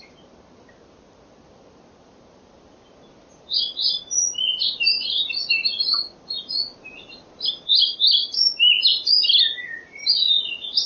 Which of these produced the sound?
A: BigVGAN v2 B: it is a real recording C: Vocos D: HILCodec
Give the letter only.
B